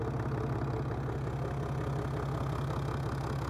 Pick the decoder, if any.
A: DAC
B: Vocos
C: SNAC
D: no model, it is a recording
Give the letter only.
D